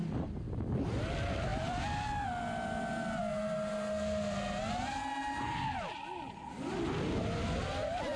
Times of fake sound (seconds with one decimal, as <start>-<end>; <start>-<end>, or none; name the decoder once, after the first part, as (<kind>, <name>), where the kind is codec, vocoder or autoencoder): none